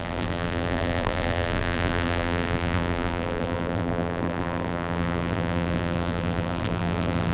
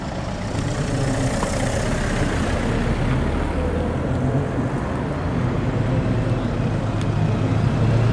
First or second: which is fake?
first